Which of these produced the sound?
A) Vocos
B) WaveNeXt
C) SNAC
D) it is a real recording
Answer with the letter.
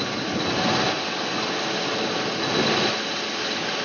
D